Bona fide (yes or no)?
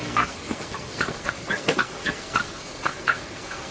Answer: no